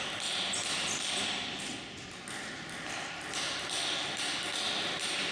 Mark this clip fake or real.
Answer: real